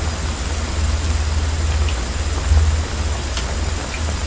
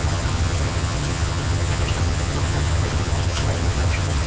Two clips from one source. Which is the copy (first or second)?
second